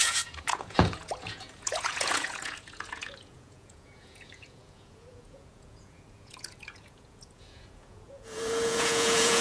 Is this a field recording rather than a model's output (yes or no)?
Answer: no